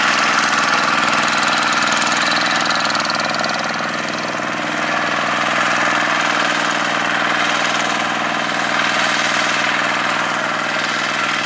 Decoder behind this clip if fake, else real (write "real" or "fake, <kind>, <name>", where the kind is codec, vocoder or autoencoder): real